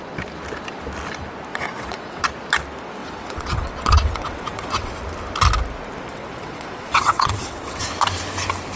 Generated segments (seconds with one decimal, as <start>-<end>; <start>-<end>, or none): 1.5-2.2; 3.0-4.9; 6.1-7.9